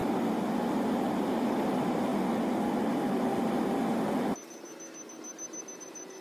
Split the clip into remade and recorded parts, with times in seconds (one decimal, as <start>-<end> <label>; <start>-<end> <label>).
0.0-0.7 recorded; 0.7-2.1 remade; 2.1-5.8 recorded; 5.8-6.2 remade